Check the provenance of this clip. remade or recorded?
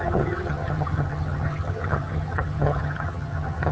remade